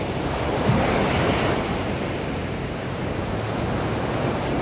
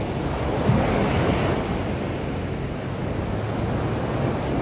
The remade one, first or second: first